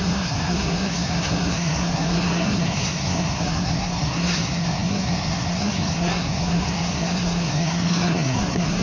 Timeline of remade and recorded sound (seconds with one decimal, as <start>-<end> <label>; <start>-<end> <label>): 0.0-8.8 remade